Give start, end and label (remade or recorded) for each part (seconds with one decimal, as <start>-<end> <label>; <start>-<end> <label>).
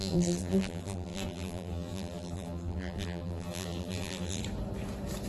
0.0-4.4 remade; 4.4-5.3 recorded